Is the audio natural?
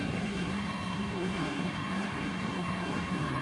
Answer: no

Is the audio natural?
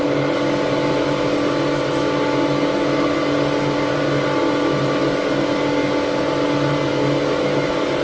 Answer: yes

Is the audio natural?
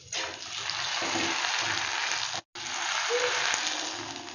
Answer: yes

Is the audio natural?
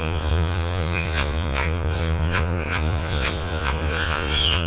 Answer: no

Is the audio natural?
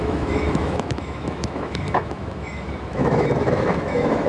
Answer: no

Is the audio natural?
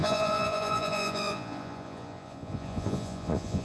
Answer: no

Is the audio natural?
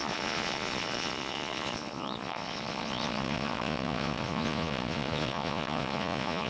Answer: no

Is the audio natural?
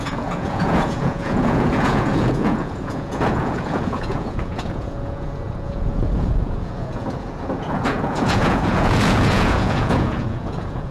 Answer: no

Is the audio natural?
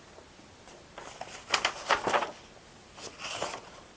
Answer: yes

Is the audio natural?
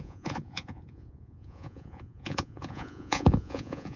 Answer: no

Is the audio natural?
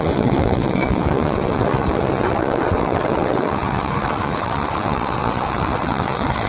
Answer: no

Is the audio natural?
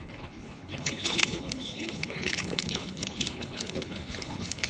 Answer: no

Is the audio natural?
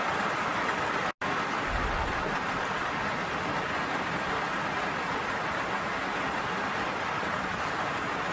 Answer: yes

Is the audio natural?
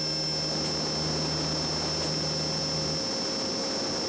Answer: yes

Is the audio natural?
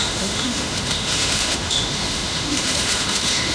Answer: no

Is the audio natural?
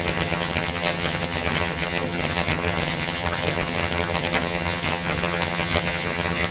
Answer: no